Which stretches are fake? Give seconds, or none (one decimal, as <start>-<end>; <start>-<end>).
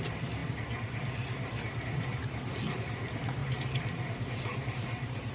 3.4-5.3